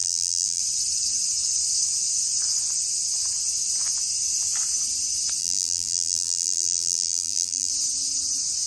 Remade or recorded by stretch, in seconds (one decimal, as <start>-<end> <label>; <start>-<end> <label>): 0.0-0.6 remade; 0.6-5.4 recorded; 5.4-7.7 remade; 7.7-8.7 recorded